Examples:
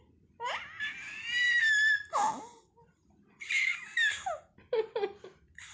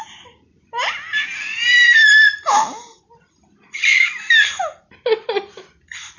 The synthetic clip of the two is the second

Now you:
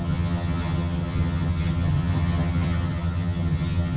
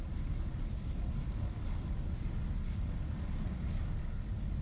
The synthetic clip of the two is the first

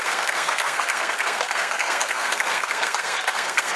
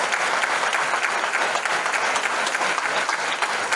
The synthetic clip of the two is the first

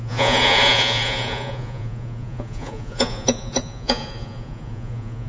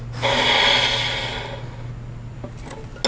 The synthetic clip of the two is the first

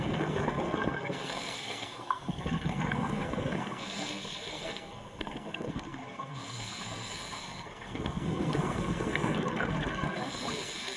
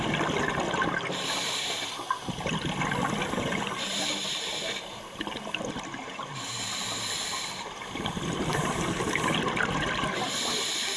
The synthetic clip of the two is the first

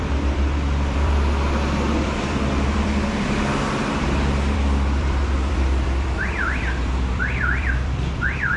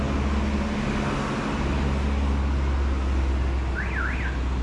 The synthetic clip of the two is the first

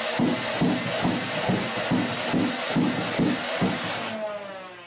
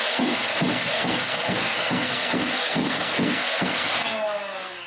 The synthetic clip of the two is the second